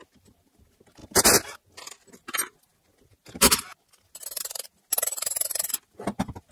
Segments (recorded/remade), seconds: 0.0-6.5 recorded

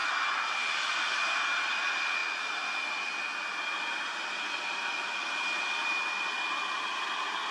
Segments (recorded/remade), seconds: 0.0-7.5 recorded